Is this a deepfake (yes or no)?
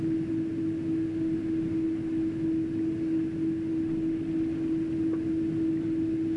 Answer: no